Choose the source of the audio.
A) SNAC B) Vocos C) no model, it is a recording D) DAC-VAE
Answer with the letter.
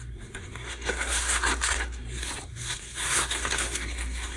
A